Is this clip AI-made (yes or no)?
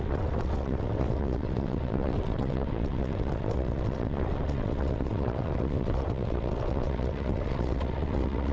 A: yes